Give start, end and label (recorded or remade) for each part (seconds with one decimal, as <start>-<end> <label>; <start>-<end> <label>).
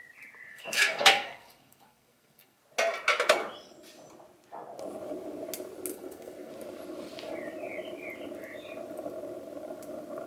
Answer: 0.0-0.5 recorded; 0.5-2.6 remade; 2.6-5.9 recorded; 5.9-6.5 remade; 6.5-10.3 recorded